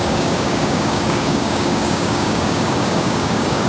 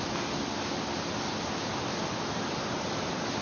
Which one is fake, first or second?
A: first